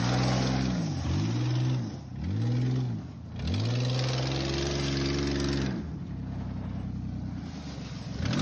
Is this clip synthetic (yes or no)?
no